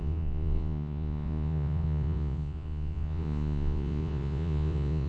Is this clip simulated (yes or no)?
yes